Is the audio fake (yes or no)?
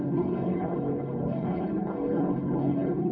yes